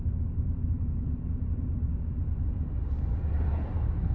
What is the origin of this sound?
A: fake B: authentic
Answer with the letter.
B